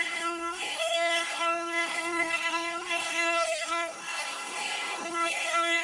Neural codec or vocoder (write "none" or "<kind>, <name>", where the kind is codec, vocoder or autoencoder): codec, SNAC